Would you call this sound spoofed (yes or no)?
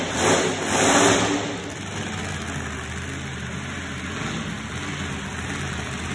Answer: no